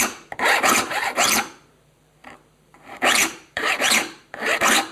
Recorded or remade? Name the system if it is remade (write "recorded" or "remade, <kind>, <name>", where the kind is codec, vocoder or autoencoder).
remade, vocoder, BigVGAN v2